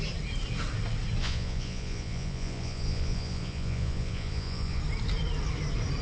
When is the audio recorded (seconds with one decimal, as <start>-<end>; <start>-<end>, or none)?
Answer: 0.0-1.2; 4.8-6.0

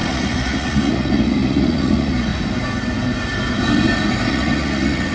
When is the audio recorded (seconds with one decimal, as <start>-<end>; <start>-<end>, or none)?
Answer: 2.3-4.3

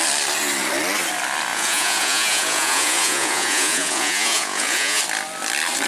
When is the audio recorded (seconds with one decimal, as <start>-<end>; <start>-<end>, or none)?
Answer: 0.0-1.5; 5.0-5.9

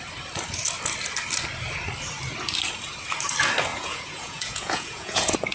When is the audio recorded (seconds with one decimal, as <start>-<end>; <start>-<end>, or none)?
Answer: 0.0-3.7

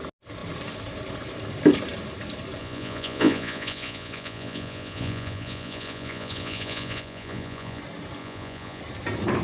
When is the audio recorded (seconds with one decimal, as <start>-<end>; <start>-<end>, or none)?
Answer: 0.0-2.6; 7.8-8.2; 8.8-9.4

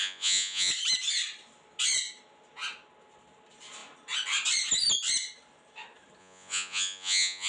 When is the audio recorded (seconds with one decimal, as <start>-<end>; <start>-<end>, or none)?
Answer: 0.7-6.2

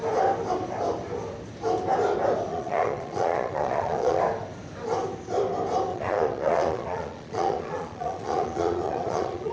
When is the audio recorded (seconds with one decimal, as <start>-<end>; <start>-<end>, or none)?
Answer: 0.0-2.5; 4.2-5.9